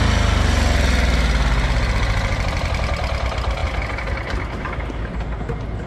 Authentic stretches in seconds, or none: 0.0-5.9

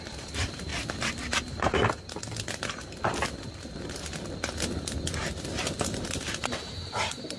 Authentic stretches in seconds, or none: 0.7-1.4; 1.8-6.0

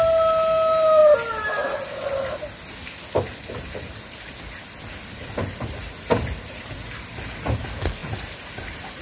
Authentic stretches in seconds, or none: 0.0-8.0